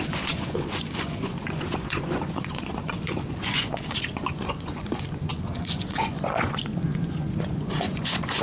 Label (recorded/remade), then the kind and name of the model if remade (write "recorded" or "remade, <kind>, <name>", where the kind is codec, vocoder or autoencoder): remade, vocoder, Vocos